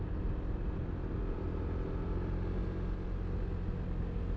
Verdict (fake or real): real